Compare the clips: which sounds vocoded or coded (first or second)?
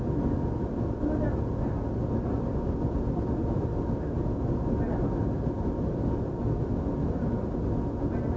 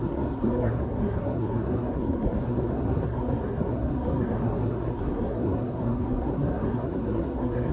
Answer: second